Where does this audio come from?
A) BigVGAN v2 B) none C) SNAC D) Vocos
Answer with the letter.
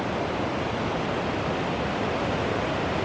B